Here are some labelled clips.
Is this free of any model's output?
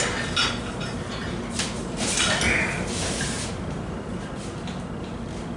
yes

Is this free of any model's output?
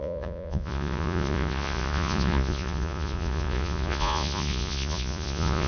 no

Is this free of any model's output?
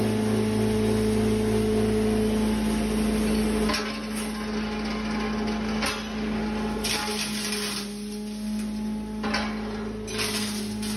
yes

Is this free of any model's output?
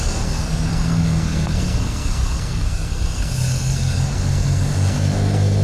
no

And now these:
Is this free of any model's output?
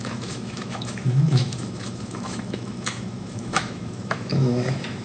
no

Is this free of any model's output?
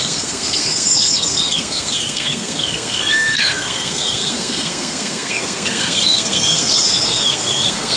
no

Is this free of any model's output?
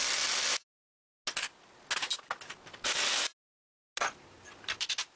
yes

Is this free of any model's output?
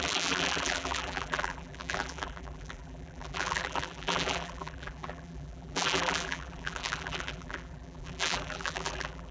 no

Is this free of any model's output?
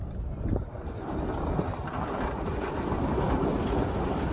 yes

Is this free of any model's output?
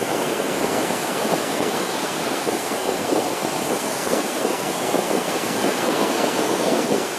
no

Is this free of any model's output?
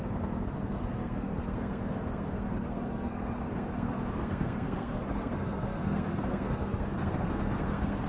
no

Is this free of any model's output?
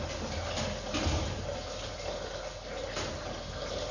yes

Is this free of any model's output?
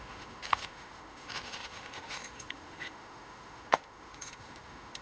no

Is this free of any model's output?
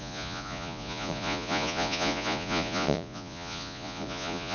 no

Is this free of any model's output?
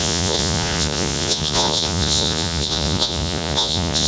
no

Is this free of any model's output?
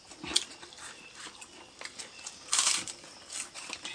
yes